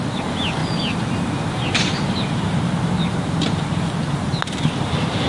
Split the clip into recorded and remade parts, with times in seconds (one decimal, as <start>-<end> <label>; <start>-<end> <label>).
0.0-5.3 recorded

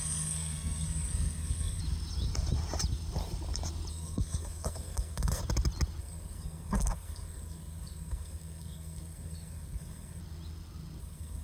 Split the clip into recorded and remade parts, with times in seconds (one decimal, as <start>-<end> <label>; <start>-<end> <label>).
0.0-1.8 remade; 1.8-3.9 recorded; 3.9-5.4 remade; 5.4-6.0 recorded; 6.0-10.2 remade; 10.2-11.0 recorded; 11.0-11.4 remade

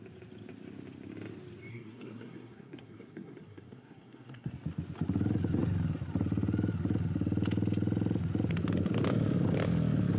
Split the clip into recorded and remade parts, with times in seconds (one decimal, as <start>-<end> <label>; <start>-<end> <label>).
0.0-1.7 recorded; 1.7-4.5 remade; 4.5-10.2 recorded